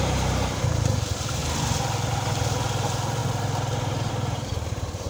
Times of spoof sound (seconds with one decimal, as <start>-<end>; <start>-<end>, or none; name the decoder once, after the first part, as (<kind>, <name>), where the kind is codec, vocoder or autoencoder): 0.0-1.4 (vocoder, BigVGAN v2); 2.1-3.2; 4.1-5.1